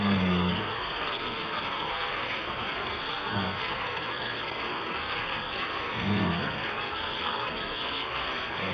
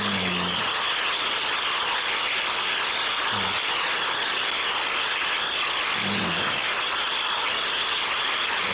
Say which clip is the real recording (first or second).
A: second